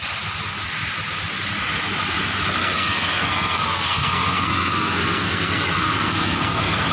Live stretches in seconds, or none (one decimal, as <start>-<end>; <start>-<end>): 0.0-2.6

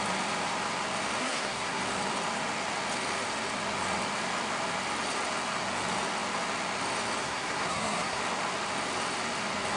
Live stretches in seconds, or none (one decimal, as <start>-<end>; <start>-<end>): 0.0-1.2; 1.8-7.2; 8.2-9.8

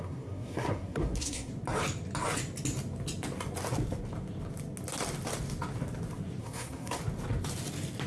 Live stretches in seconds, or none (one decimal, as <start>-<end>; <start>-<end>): 1.5-6.4; 7.0-8.1

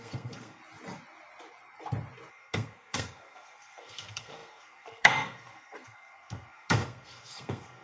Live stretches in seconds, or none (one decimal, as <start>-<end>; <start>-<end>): 0.6-2.3

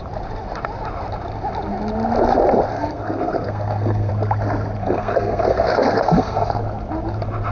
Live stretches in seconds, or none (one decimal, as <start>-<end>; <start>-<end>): 0.0-2.7; 4.1-4.8; 6.6-7.5

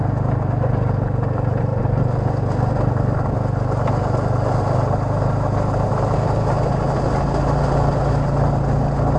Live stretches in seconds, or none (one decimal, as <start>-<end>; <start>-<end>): 0.0-9.2